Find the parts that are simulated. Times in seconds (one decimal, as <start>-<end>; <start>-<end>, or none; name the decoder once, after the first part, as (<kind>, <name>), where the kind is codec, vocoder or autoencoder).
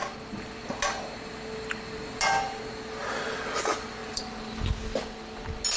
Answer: none